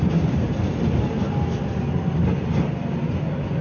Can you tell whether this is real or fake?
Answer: real